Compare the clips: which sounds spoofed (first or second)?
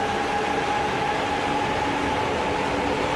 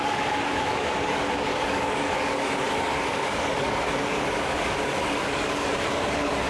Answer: second